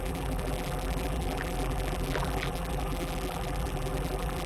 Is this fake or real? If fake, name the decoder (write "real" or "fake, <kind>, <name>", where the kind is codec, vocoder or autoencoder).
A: fake, vocoder, BigVGAN v2